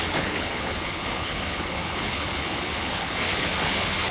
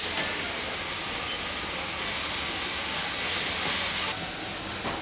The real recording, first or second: second